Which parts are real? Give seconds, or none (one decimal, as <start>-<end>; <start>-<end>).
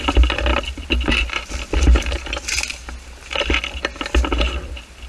0.0-5.1